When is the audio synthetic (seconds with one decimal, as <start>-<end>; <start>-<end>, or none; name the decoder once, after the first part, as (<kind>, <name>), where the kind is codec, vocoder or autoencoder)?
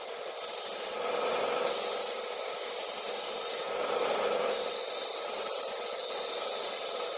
0.0-7.2 (vocoder, BigVGAN v2)